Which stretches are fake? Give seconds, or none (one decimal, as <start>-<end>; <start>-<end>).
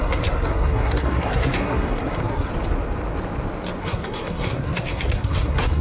0.0-2.5; 3.8-5.8